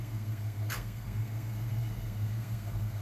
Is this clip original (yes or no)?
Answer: no